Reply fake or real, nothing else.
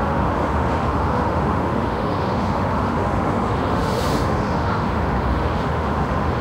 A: fake